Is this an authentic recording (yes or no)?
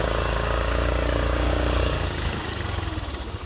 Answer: no